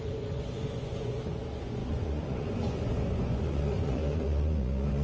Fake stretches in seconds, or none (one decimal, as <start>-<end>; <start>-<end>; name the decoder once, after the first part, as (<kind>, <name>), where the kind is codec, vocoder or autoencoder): 0.0-5.0 (vocoder, Vocos)